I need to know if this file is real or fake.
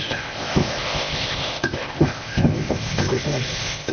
fake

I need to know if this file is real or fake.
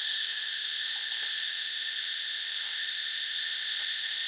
fake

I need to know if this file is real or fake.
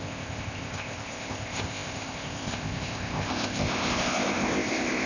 fake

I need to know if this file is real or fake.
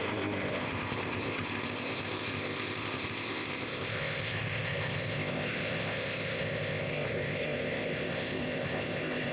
fake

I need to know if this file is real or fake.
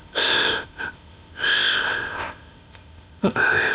fake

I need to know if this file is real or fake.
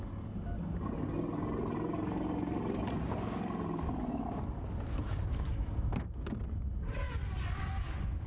real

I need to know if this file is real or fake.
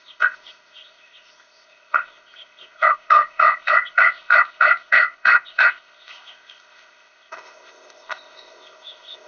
fake